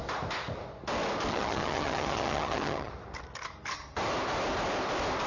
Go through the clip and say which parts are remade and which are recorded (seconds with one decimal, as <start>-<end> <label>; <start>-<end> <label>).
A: 0.0-1.3 recorded; 1.3-2.9 remade; 2.9-5.3 recorded